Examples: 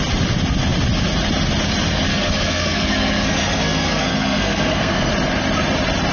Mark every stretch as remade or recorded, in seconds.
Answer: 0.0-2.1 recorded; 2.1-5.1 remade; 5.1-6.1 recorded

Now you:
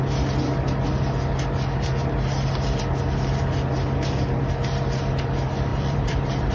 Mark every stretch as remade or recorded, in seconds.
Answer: 0.0-5.7 recorded; 5.7-6.5 remade

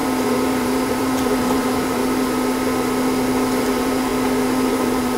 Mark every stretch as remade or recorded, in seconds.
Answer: 0.0-2.0 remade; 2.0-3.6 recorded; 3.6-4.1 remade; 4.1-4.7 recorded; 4.7-5.2 remade

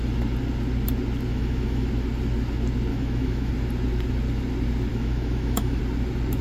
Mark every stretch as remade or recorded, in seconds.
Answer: 0.0-1.3 recorded; 1.3-1.9 remade; 1.9-2.9 recorded; 2.9-3.5 remade; 3.5-4.9 recorded; 4.9-5.8 remade; 5.8-6.4 recorded

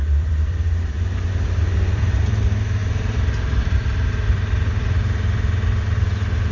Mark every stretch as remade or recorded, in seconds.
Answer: 0.0-2.4 remade; 2.4-2.8 recorded; 2.8-6.5 remade

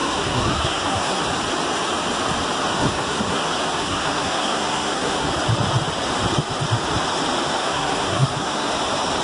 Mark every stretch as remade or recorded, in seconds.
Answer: 0.0-1.2 remade; 1.2-2.7 recorded; 2.7-3.4 remade; 3.4-3.8 recorded; 3.8-5.3 remade; 5.3-7.6 recorded; 7.6-8.7 remade; 8.7-9.2 recorded

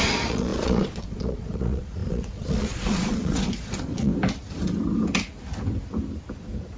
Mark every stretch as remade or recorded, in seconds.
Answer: 0.0-4.1 remade; 4.1-6.8 recorded